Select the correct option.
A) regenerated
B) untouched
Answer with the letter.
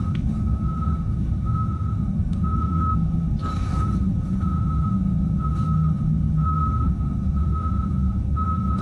A